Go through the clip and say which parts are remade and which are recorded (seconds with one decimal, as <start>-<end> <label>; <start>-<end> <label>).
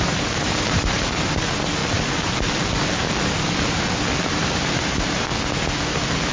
0.0-1.8 remade; 1.8-4.3 recorded; 4.3-5.3 remade; 5.3-6.3 recorded